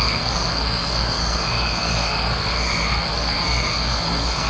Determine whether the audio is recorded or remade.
remade